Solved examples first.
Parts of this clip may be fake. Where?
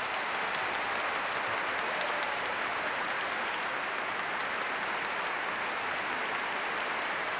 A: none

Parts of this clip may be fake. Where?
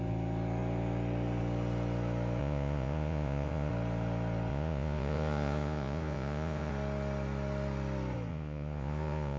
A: 2.4-3.7 (vocoder, Vocos); 4.5-6.7; 8.3-9.4